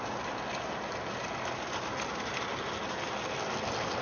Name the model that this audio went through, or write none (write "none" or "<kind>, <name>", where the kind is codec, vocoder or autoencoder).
none